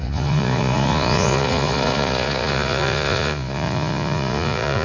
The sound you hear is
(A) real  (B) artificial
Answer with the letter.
B